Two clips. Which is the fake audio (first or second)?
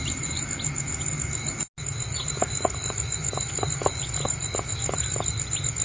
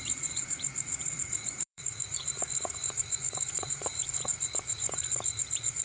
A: second